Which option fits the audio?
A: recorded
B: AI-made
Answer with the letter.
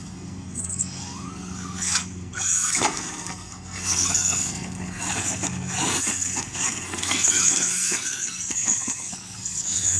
B